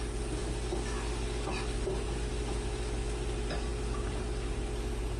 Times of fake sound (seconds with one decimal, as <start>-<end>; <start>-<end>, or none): none